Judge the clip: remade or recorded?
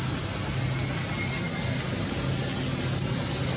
recorded